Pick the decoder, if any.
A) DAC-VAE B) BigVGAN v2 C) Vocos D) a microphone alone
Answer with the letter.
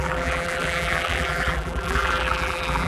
B